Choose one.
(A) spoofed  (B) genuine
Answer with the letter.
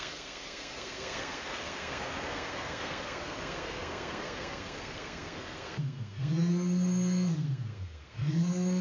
A